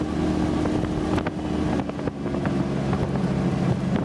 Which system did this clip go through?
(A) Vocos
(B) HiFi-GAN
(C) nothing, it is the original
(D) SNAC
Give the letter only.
C